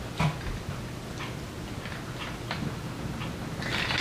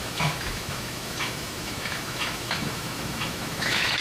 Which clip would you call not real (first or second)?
second